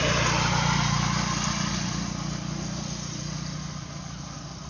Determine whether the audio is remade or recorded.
recorded